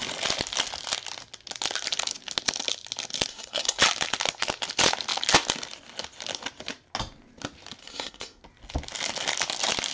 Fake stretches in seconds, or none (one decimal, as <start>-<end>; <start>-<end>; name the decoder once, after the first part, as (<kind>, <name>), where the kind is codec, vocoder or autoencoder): 3.3-3.8 (codec, SNAC); 7.8-8.4